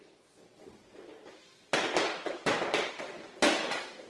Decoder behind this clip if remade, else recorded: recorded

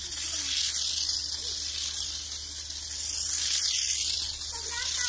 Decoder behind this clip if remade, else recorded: recorded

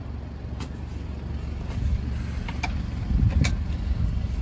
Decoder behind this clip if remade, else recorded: recorded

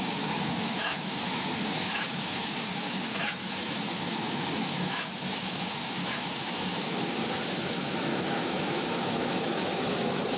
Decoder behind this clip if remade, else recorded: remade, autoencoder, DAC-VAE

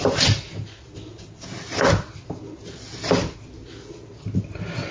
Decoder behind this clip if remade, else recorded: recorded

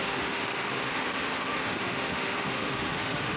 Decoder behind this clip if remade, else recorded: remade, autoencoder, DAC-VAE